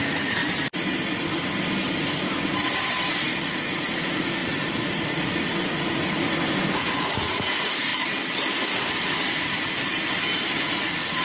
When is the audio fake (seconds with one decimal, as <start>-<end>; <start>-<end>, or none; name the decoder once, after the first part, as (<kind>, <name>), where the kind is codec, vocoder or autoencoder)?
0.0-0.4 (vocoder, Vocos); 3.4-7.9; 10.7-11.2